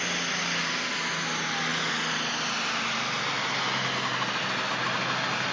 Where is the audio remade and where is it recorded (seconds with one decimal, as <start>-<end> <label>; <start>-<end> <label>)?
0.0-5.5 recorded